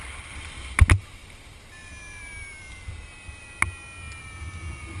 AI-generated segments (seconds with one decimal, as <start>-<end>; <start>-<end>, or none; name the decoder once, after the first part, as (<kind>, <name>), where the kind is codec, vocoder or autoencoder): none

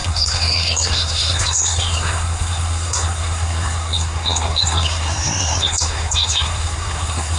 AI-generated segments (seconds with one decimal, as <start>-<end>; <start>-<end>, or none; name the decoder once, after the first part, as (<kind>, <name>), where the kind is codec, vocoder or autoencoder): 0.0-7.4 (codec, SNAC)

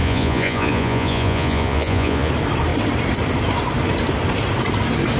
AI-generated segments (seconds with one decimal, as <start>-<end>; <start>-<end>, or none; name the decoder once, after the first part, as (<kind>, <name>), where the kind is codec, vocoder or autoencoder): 0.0-2.3 (vocoder, Vocos)

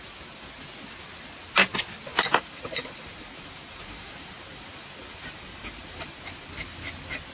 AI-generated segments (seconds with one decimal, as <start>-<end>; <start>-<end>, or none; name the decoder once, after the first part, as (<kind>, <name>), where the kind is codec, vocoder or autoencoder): 2.1-6.5 (vocoder, BigVGAN v2)

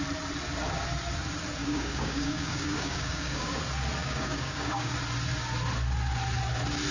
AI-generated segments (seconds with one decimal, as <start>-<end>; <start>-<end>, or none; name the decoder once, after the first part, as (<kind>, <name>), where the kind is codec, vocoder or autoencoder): 1.6-3.6 (codec, DAC); 4.0-4.9